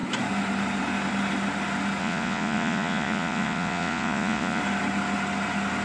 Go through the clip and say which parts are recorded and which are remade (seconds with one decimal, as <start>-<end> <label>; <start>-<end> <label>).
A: 0.0-2.0 recorded; 2.0-4.6 remade; 4.6-5.8 recorded